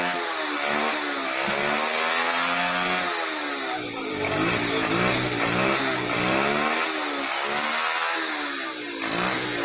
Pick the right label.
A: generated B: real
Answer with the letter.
B